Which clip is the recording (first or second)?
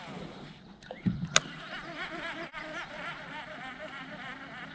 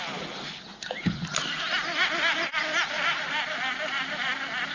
second